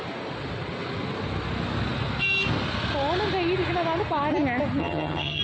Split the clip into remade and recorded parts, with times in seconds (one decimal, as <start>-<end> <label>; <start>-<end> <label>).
0.0-4.8 recorded; 4.8-5.4 remade